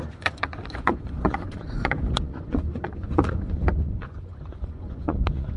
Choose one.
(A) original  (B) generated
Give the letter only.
B